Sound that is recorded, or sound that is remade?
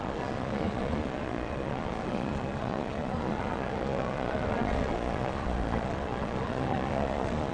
remade